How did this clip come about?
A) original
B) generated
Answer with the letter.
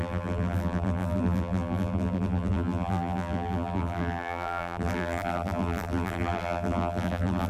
B